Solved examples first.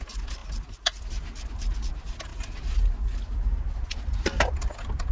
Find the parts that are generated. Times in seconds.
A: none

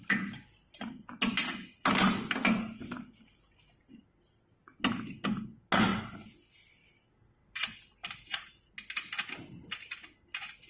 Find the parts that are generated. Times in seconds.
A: 7.4-8.7 (vocoder, BigVGAN v2)